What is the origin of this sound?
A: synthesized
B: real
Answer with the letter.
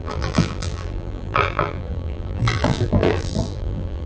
A